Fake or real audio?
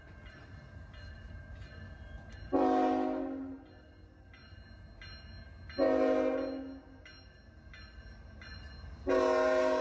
real